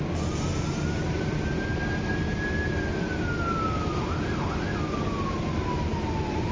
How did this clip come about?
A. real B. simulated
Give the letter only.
A